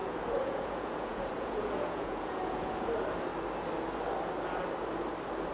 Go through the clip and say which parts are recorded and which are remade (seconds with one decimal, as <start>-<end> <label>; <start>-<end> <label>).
0.0-2.9 remade; 2.9-5.5 recorded